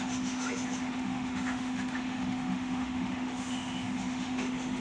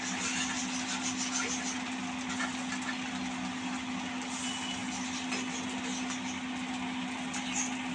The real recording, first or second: second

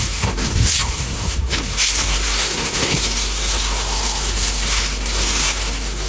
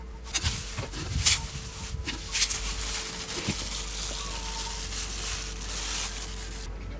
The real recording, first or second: second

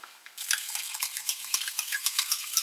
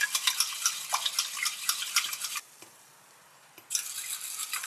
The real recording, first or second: second